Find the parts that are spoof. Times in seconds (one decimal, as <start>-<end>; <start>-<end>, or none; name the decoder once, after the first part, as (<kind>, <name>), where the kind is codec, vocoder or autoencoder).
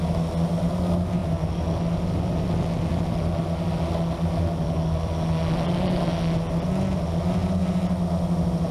none